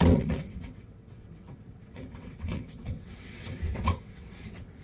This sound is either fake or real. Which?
fake